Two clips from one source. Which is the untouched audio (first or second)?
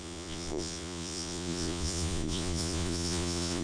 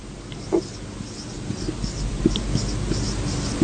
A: second